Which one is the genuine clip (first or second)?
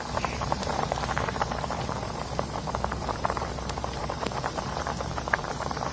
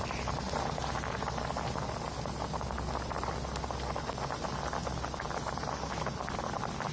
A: second